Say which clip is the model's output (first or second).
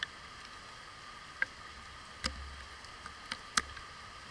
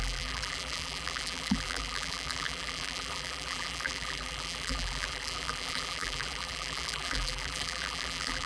second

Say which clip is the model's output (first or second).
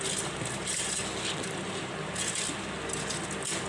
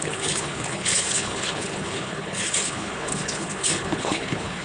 second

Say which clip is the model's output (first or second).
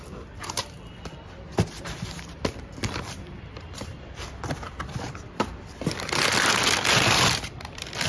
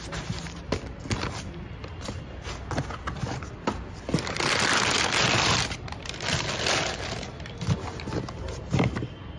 first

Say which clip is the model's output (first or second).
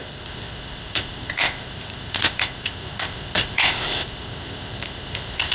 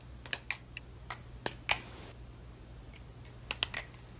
first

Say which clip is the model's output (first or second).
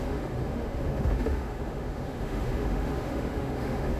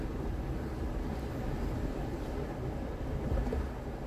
first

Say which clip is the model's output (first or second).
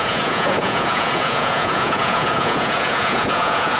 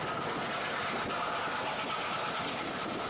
first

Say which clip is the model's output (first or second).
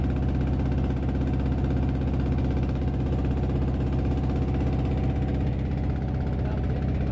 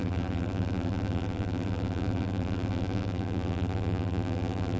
second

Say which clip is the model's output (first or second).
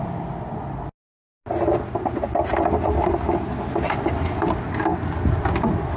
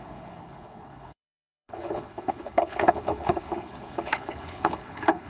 second